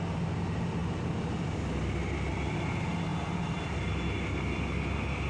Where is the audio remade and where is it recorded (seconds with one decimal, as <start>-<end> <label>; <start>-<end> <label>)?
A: 0.0-5.3 recorded